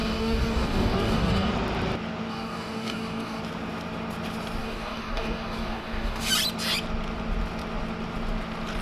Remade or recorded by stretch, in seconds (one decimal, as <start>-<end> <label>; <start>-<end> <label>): 0.0-1.5 remade; 1.5-2.3 recorded; 2.3-3.4 remade; 3.4-4.6 recorded; 4.6-6.3 remade; 6.3-8.8 recorded